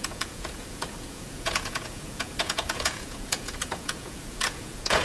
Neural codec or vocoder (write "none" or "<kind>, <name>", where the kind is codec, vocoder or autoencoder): vocoder, Vocos